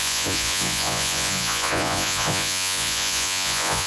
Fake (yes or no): yes